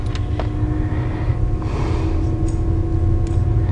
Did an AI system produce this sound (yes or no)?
no